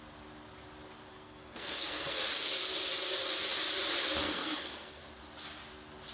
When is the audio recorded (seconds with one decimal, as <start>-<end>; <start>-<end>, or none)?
0.0-1.1; 2.2-4.2; 5.0-6.1